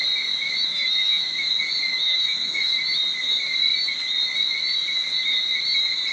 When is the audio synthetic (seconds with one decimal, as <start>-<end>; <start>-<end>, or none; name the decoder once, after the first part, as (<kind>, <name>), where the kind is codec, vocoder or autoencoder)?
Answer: 0.6-1.5 (autoencoder, DAC-VAE); 1.9-2.8